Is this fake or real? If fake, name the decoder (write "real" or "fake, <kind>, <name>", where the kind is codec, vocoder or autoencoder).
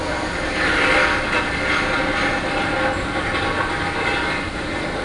real